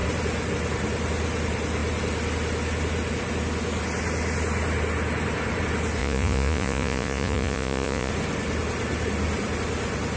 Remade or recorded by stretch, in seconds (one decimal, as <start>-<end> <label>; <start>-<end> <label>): 0.0-6.0 recorded; 6.0-8.1 remade; 8.1-10.2 recorded